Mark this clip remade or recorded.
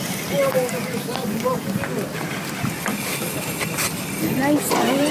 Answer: recorded